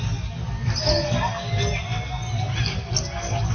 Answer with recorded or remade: recorded